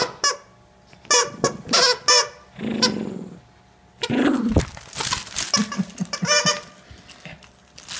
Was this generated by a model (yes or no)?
no